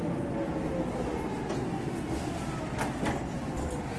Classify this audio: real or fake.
real